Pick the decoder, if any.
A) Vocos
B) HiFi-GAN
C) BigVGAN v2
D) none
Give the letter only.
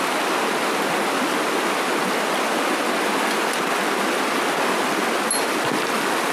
D